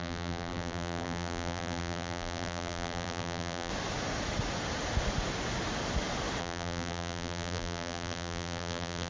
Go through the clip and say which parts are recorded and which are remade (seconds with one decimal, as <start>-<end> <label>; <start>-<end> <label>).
0.0-3.7 remade; 3.7-6.4 recorded; 6.4-9.1 remade